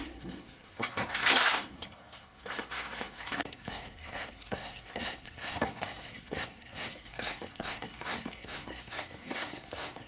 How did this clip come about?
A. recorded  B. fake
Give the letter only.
B